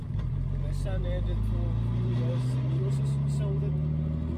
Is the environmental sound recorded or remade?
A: recorded